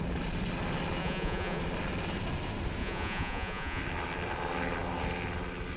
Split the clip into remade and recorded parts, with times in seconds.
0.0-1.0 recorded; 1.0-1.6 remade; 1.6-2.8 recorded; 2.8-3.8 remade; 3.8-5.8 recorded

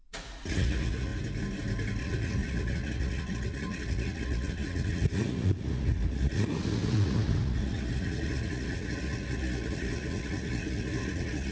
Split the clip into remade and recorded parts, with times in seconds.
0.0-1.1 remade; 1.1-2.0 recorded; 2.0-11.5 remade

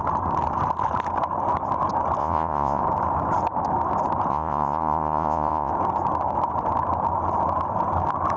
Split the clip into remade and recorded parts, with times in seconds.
0.0-2.2 recorded; 2.2-2.8 remade; 2.8-4.3 recorded; 4.3-5.7 remade; 5.7-8.4 recorded

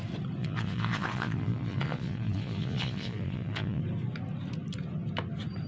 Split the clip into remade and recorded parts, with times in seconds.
0.0-0.4 recorded; 0.4-3.8 remade; 3.8-5.7 recorded

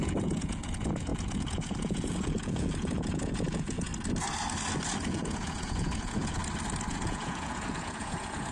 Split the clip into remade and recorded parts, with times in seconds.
0.0-3.9 remade; 3.9-5.1 recorded; 5.1-6.4 remade; 6.4-6.9 recorded; 6.9-8.5 remade

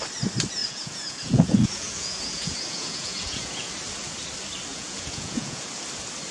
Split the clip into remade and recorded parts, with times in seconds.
0.0-0.6 recorded; 0.6-3.7 remade; 3.7-4.7 recorded; 4.7-5.6 remade; 5.6-6.3 recorded